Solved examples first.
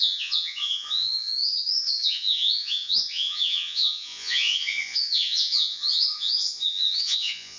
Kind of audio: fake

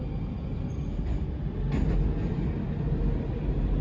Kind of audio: real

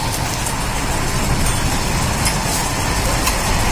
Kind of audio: real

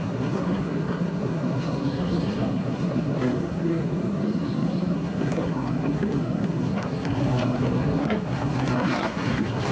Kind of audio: fake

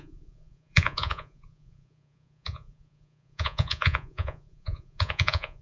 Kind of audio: fake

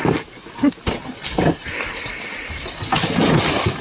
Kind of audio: real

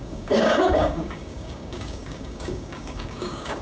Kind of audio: fake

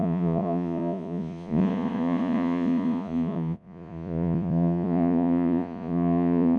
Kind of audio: fake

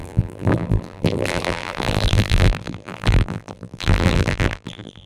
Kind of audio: fake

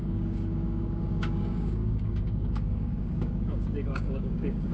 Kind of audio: fake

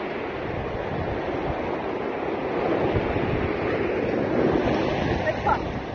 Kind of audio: real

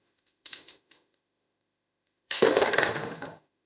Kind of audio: fake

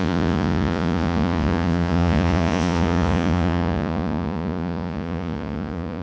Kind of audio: fake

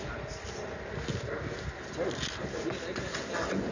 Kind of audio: real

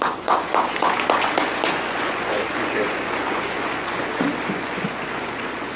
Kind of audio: fake